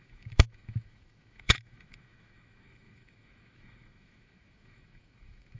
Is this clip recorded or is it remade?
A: remade